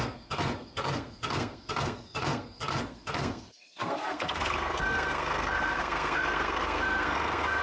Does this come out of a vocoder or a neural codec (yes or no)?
yes